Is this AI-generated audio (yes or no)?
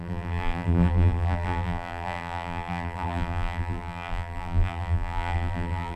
yes